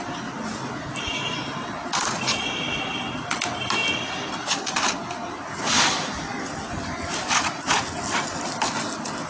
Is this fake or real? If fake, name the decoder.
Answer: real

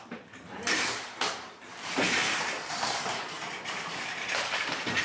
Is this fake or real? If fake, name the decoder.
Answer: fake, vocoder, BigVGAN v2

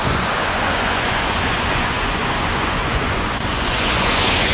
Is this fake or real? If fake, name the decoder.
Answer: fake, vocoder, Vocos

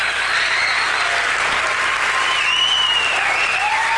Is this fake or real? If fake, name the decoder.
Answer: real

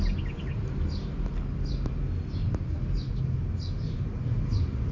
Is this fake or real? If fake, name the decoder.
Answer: real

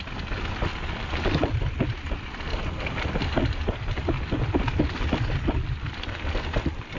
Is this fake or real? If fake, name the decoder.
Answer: real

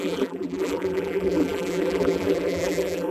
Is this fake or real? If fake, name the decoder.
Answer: fake, vocoder, BigVGAN v2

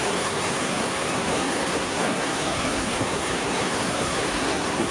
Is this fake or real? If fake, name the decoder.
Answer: fake, codec, SNAC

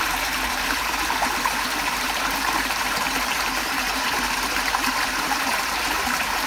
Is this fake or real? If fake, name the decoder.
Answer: fake, vocoder, BigVGAN v2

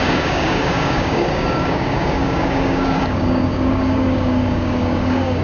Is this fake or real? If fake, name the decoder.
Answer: fake, codec, DAC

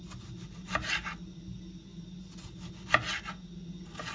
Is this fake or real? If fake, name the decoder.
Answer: real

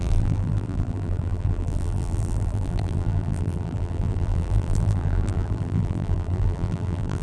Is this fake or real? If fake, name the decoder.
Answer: fake, vocoder, BigVGAN v2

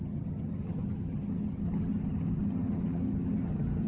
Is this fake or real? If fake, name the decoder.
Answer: fake, vocoder, HiFi-GAN